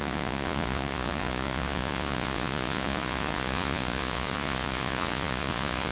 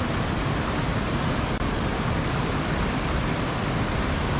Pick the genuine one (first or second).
second